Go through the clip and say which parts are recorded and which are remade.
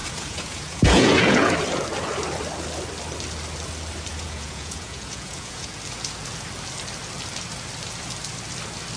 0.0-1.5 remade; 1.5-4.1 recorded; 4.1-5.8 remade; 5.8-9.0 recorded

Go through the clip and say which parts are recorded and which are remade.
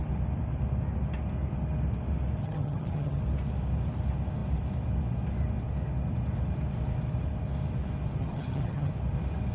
0.0-2.4 recorded; 2.4-3.2 remade; 3.2-8.2 recorded; 8.2-8.9 remade; 8.9-9.5 recorded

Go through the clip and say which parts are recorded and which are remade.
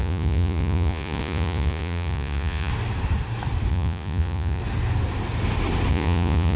0.0-2.7 remade; 2.7-3.7 recorded; 3.7-4.6 remade; 4.6-5.9 recorded; 5.9-6.6 remade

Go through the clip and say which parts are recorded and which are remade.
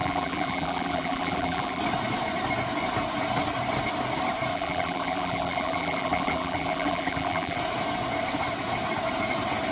0.0-1.8 remade; 1.8-4.5 recorded; 4.5-7.6 remade; 7.6-9.7 recorded